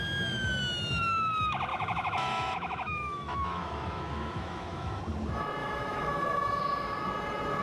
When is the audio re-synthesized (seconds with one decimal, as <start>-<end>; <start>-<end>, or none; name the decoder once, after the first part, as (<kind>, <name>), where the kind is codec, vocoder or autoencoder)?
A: 1.7-5.0 (autoencoder, DAC-VAE); 5.6-6.6